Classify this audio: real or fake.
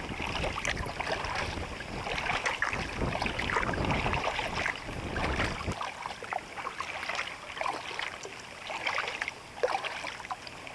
real